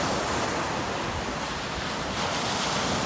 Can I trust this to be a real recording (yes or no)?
yes